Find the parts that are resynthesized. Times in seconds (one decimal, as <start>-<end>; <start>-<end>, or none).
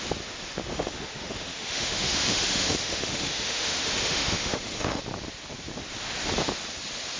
0.7-5.0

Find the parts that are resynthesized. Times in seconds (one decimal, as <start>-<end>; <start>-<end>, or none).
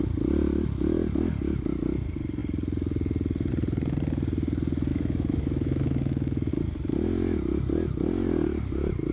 4.9-6.5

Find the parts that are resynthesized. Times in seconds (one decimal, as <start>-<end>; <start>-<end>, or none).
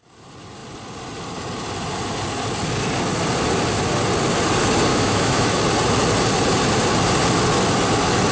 4.9-5.6